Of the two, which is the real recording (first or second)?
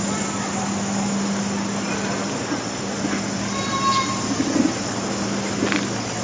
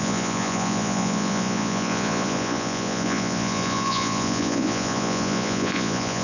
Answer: first